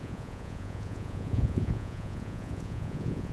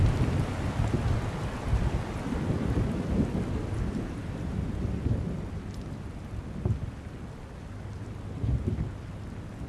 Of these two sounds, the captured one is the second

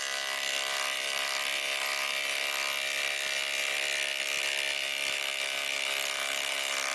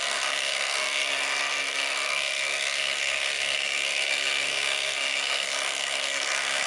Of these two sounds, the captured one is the first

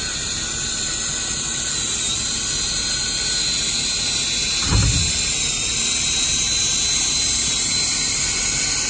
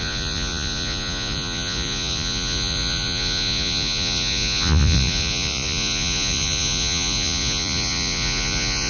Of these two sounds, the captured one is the first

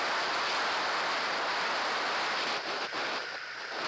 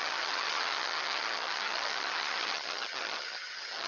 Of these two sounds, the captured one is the first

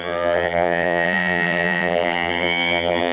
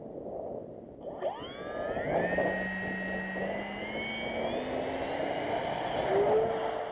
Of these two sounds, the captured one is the second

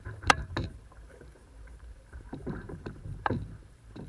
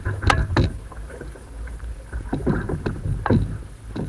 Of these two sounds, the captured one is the second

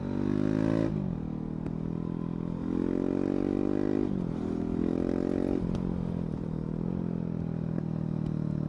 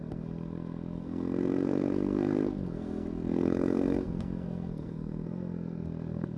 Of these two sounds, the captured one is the first